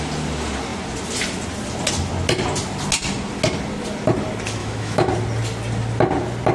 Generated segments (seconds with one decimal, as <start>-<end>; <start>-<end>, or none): 4.6-5.1